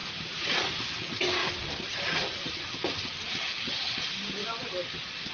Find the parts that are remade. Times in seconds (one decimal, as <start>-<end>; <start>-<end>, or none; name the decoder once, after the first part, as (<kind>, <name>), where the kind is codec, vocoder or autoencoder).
0.0-0.7 (vocoder, BigVGAN v2); 1.4-2.6